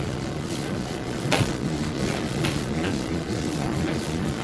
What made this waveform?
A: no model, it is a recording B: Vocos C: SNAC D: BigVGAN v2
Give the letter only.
B